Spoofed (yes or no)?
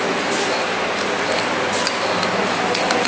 no